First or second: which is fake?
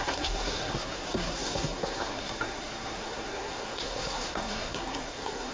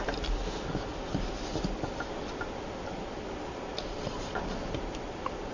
first